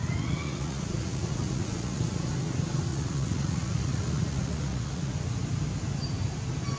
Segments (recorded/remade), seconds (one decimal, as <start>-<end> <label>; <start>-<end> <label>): 0.0-2.3 remade; 2.3-2.9 recorded; 2.9-5.1 remade; 5.1-6.8 recorded